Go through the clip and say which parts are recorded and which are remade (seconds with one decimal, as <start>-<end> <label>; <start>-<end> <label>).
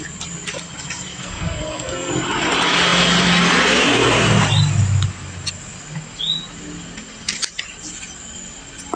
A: 0.0-1.1 recorded; 1.1-2.1 remade; 2.1-8.9 recorded